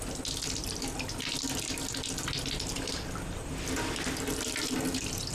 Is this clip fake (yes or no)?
no